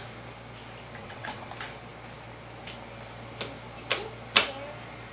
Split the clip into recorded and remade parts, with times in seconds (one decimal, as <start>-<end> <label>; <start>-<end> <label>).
0.0-1.0 recorded; 1.0-1.5 remade; 1.5-5.1 recorded

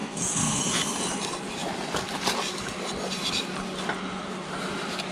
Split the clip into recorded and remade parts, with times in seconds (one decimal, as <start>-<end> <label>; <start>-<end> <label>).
0.0-0.6 remade; 0.6-5.1 recorded

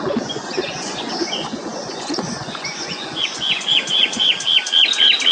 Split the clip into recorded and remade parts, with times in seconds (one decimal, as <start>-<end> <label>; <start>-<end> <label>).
0.0-4.3 remade; 4.3-5.3 recorded

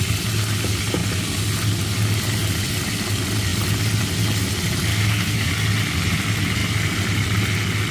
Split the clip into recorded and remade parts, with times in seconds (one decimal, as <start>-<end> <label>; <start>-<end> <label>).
0.0-4.9 recorded; 4.9-5.5 remade; 5.5-7.9 recorded

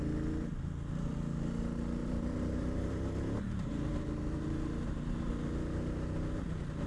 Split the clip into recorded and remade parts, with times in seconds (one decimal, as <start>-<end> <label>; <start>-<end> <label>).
0.0-2.0 recorded; 2.0-5.3 remade; 5.3-6.9 recorded

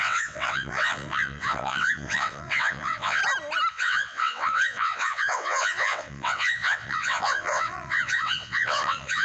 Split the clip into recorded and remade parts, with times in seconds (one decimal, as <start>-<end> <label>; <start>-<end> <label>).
0.0-3.2 remade; 3.2-3.7 recorded; 3.7-9.2 remade

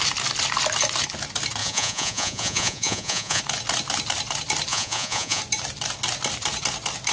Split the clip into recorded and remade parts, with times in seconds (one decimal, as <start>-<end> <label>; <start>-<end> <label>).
0.0-1.6 recorded; 1.6-3.4 remade; 3.4-4.7 recorded; 4.7-5.4 remade; 5.4-7.1 recorded

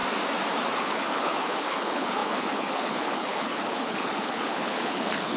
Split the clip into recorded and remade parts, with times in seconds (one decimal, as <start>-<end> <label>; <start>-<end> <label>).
0.0-0.8 recorded; 0.8-5.4 remade